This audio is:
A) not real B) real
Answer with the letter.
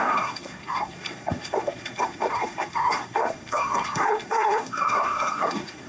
A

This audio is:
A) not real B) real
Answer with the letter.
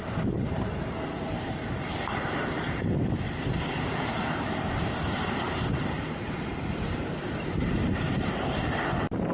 A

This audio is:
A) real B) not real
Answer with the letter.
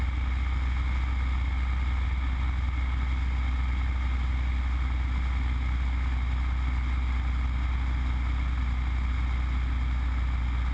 A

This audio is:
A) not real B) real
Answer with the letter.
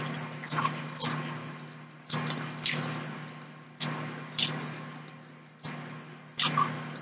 B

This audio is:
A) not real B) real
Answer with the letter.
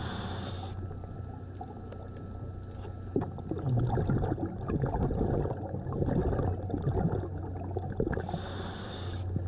B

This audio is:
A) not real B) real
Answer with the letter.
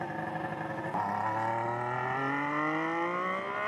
B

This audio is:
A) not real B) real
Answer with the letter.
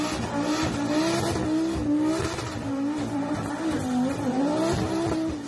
B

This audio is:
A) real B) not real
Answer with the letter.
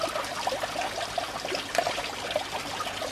A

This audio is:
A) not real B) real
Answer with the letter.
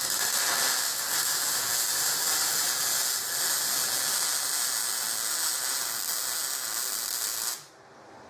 B